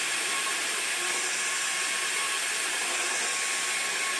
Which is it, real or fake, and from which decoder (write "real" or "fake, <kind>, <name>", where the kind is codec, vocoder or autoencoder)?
fake, vocoder, BigVGAN v2